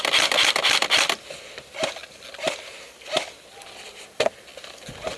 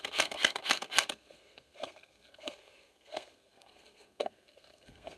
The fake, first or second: second